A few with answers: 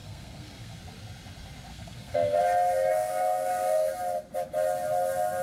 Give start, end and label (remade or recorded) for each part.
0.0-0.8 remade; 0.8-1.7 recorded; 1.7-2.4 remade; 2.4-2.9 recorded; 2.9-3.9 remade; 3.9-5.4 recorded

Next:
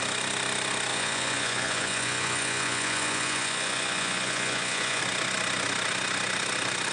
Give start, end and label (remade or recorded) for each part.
0.0-0.9 recorded; 0.9-5.0 remade; 5.0-6.9 recorded

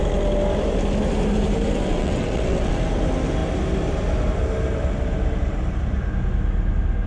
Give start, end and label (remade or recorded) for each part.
0.0-1.9 recorded; 1.9-2.7 remade; 2.7-7.1 recorded

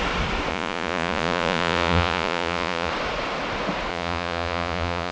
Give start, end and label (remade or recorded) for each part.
0.0-0.5 recorded; 0.5-2.9 remade; 2.9-3.9 recorded; 3.9-5.1 remade

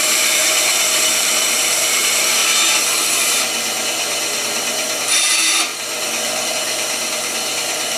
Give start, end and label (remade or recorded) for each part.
0.0-2.4 remade; 2.4-5.2 recorded; 5.2-5.7 remade; 5.7-6.5 recorded; 6.5-8.0 remade

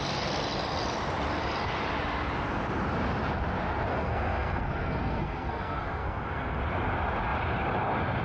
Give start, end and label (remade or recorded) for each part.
0.0-3.9 recorded; 3.9-6.6 remade; 6.6-8.2 recorded

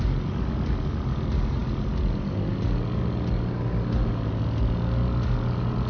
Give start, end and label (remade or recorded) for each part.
0.0-5.9 recorded

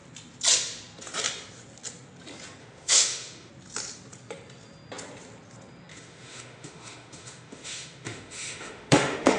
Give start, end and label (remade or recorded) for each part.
0.0-2.6 recorded; 2.6-3.5 remade; 3.5-5.9 recorded; 5.9-9.4 remade